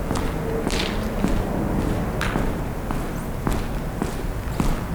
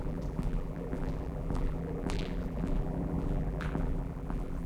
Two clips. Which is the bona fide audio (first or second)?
first